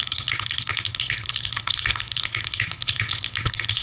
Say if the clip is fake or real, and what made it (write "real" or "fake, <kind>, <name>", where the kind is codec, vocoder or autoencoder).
fake, codec, HILCodec